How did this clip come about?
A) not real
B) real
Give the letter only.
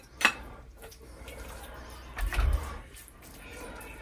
A